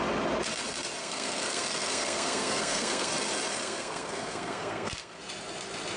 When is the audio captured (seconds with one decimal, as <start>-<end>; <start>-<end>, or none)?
0.0-1.0; 3.1-3.5; 5.2-6.0